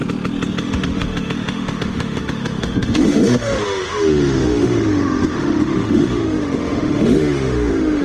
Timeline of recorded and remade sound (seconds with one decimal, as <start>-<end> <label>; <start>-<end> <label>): 0.0-0.6 recorded; 0.6-8.0 remade